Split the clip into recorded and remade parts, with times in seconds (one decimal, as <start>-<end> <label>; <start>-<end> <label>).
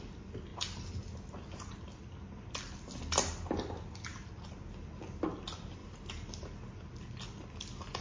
0.0-8.0 recorded